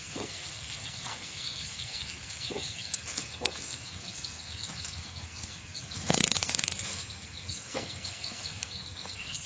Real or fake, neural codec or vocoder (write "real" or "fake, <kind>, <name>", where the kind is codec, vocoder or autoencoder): fake, codec, SNAC